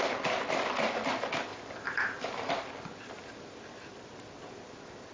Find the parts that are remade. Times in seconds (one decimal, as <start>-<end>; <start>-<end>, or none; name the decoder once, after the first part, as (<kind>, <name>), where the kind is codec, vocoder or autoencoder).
none